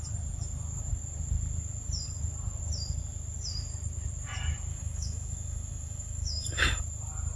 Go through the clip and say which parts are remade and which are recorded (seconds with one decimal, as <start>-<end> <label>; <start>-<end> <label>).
0.0-4.7 recorded; 4.7-6.8 remade; 6.8-7.4 recorded